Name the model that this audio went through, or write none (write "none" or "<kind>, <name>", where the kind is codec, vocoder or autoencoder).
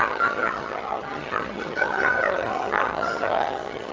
vocoder, HiFi-GAN